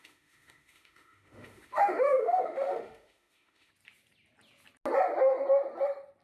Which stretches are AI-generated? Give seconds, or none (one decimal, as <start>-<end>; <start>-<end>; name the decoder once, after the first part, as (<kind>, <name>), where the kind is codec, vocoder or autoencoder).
0.0-3.7 (autoencoder, DAC-VAE)